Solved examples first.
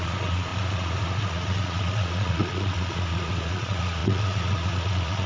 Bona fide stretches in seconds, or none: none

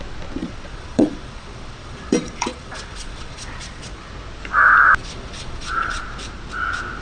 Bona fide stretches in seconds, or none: 0.0-0.4; 4.1-5.0; 6.0-7.0

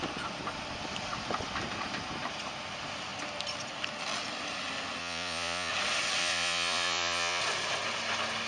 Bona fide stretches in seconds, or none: 0.0-5.0; 5.7-6.2; 7.4-8.5